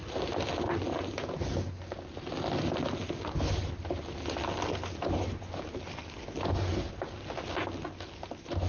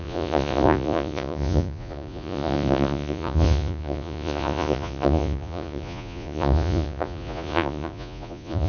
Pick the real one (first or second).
first